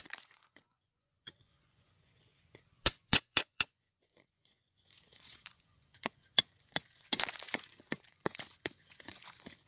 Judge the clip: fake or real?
fake